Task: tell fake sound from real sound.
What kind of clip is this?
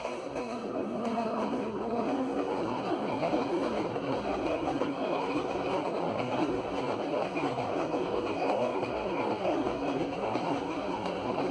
fake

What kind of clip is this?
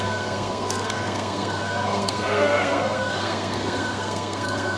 fake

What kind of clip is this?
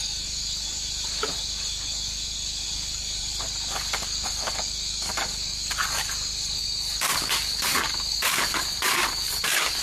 fake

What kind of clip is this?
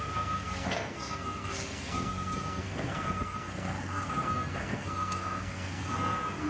fake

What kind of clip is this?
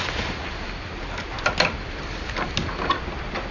real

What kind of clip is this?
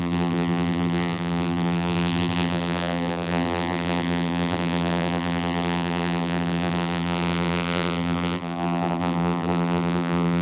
fake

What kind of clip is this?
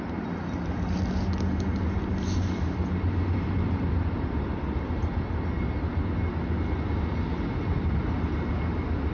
real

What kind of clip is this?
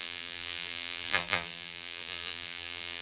fake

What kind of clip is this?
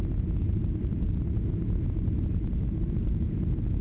real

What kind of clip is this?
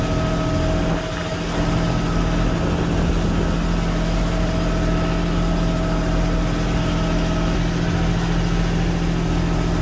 real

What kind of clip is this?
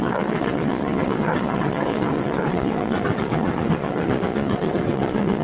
fake